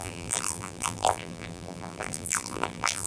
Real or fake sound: fake